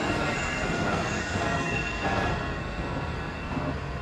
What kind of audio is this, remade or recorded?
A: remade